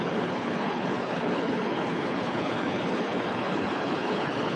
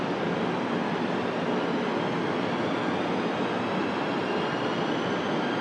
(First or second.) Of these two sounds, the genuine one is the second